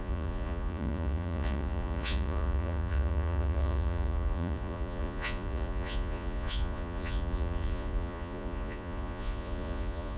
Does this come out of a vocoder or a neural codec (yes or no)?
yes